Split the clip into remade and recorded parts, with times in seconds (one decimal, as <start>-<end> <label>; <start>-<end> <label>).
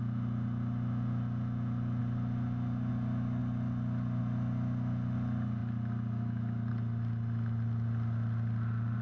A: 0.0-9.0 recorded